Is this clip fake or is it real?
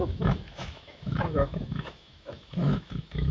fake